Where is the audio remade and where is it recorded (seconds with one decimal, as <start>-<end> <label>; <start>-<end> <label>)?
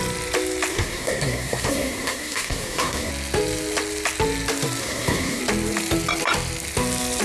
0.0-0.7 recorded; 0.7-3.1 remade; 3.1-4.8 recorded; 4.8-5.4 remade; 5.4-7.2 recorded